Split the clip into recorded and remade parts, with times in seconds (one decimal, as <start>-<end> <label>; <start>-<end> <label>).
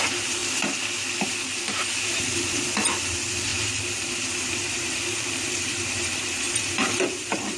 0.0-0.4 remade; 0.4-1.3 recorded; 1.3-7.6 remade